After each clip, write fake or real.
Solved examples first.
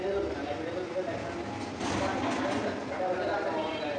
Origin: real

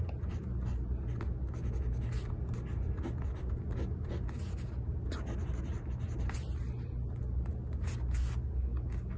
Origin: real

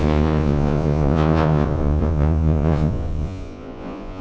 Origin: fake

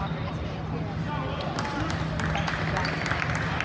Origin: real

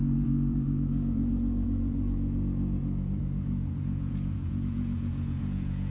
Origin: fake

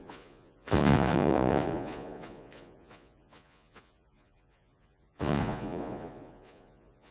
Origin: fake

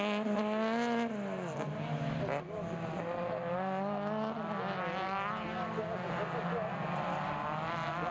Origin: real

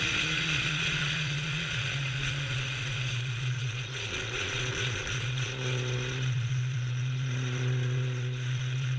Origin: fake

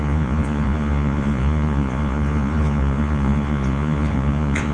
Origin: fake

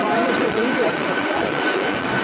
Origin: fake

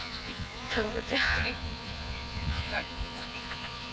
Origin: fake